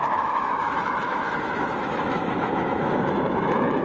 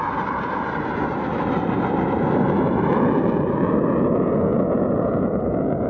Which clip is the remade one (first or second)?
first